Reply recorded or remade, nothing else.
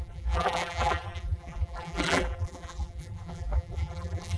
remade